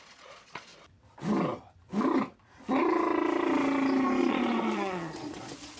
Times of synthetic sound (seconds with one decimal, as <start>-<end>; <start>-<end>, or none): 0.0-0.7; 4.2-5.8